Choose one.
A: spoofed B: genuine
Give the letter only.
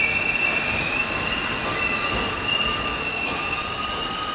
B